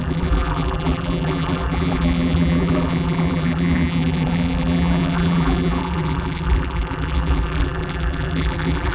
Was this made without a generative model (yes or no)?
no